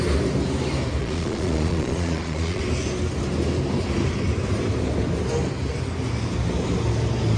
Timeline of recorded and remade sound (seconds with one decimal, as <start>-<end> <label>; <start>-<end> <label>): 0.0-1.0 recorded; 1.0-2.6 remade; 2.6-7.4 recorded